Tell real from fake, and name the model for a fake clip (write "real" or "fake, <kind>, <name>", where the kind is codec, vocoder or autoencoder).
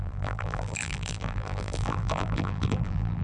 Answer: fake, vocoder, BigVGAN v2